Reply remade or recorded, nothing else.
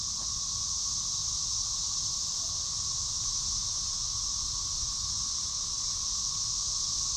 recorded